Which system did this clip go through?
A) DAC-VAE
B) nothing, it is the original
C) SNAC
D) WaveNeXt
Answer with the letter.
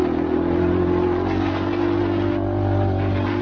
B